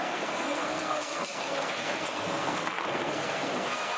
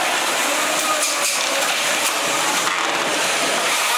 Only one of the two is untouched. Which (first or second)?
second